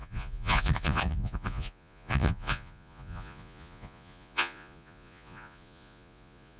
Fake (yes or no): yes